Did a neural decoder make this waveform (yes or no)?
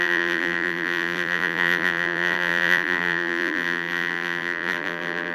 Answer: yes